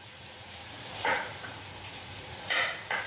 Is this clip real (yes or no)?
no